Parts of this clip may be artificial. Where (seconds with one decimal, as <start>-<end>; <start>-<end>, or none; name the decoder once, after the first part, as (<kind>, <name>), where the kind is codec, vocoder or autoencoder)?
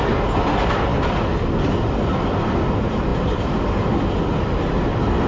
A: none